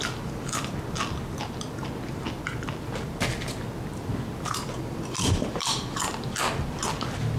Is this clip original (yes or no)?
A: yes